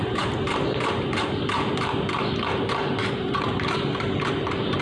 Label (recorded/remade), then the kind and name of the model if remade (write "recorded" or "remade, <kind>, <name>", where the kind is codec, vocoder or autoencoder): remade, vocoder, BigVGAN v2